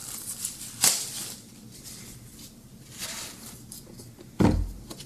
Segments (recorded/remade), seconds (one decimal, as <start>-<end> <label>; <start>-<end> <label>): 0.0-5.1 recorded